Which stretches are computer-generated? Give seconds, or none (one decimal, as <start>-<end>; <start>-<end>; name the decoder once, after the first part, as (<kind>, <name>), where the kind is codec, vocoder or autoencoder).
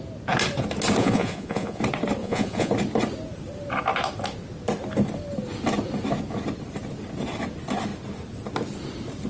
1.0-1.8 (vocoder, Vocos); 2.2-2.7